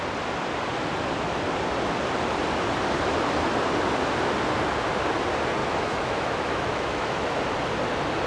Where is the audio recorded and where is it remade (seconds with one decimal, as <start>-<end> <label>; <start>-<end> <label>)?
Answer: 0.0-5.6 recorded; 5.6-7.4 remade; 7.4-8.3 recorded